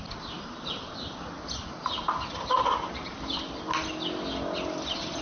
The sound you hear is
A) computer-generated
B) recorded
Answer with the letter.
B